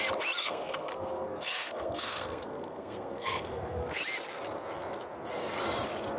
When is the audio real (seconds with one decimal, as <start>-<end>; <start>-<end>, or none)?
0.0-0.4; 4.0-6.2